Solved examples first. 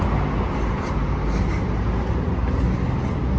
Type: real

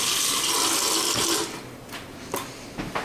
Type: real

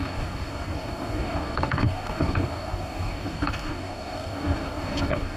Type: fake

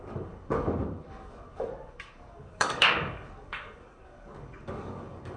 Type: fake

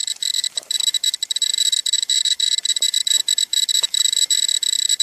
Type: fake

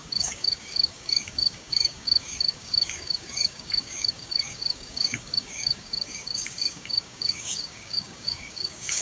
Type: fake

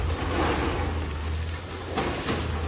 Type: real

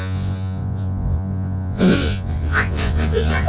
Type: fake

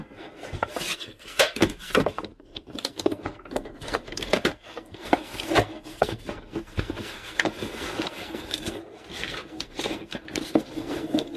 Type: fake